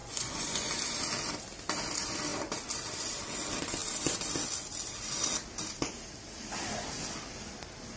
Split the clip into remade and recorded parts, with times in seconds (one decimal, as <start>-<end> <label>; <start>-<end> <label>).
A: 0.0-0.7 remade; 0.7-8.0 recorded